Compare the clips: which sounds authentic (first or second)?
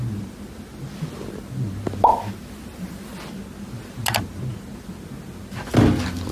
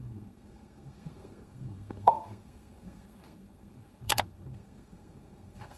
first